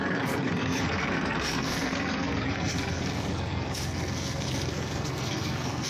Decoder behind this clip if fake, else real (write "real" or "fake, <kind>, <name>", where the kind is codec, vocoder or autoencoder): fake, codec, SNAC